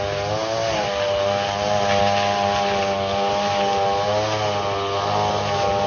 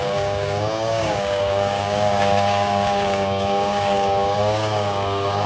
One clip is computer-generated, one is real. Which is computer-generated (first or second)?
second